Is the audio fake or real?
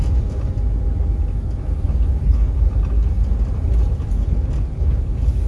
real